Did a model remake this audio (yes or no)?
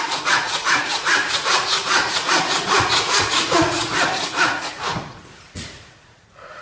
yes